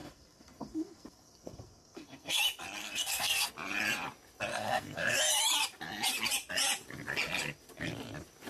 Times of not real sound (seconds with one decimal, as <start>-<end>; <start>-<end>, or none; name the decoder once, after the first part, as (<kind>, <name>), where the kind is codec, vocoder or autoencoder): 0.0-2.4 (codec, SNAC); 2.8-3.5; 4.5-5.2